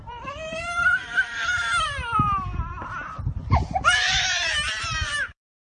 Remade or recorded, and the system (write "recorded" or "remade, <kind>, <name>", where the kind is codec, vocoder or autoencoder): remade, vocoder, BigVGAN v2